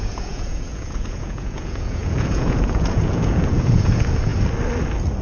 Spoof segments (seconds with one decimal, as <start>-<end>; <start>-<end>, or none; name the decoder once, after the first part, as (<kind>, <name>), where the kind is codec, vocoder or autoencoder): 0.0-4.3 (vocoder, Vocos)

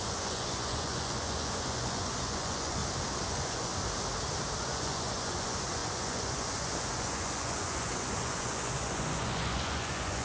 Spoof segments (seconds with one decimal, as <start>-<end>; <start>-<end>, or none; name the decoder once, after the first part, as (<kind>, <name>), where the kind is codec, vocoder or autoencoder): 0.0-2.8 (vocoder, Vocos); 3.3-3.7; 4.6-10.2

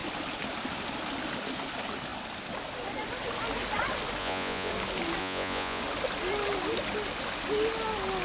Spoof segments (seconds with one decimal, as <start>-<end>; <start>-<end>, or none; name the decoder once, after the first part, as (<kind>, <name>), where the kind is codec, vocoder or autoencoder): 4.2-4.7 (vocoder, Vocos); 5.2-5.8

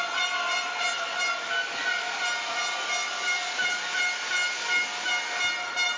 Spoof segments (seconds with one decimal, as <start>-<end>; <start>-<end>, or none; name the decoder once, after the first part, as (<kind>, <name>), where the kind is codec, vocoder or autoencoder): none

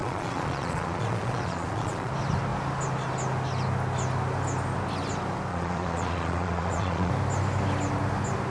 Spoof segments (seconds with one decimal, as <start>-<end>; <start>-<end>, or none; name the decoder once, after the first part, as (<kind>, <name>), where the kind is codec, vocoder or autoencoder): 0.0-2.1 (vocoder, Vocos); 5.5-7.1

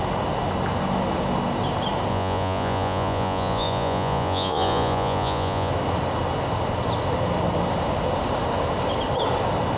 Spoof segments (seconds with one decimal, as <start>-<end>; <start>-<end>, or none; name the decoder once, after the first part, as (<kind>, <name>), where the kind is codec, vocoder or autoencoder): 2.1-5.7 (vocoder, Vocos)